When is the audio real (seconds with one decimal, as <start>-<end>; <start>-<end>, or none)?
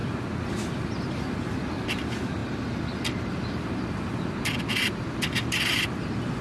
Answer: 0.0-6.4